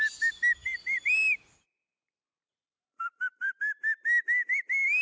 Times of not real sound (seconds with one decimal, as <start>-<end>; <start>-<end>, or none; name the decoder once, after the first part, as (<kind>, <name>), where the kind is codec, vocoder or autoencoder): 0.6-3.6 (vocoder, BigVGAN v2)